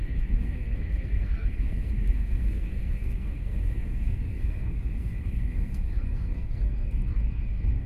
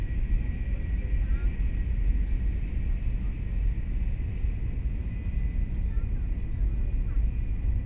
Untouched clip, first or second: second